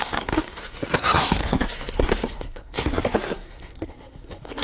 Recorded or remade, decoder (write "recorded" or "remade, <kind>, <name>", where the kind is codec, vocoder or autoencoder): remade, codec, SNAC